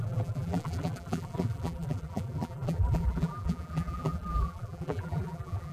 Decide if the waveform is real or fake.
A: fake